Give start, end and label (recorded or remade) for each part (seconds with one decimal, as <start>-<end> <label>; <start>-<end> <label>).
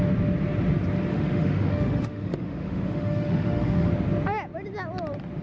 0.0-1.1 recorded; 1.1-3.9 remade; 3.9-5.4 recorded